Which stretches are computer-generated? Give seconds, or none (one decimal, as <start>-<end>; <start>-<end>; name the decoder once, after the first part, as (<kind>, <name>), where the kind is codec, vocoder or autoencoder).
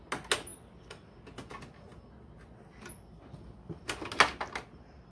none